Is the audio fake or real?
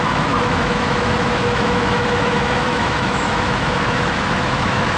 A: fake